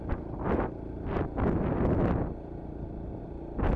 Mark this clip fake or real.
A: real